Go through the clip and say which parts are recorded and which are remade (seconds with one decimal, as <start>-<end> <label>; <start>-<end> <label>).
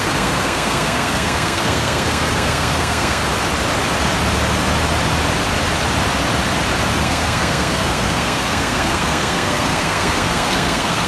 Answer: 0.0-3.2 remade; 3.2-7.0 recorded; 7.0-11.1 remade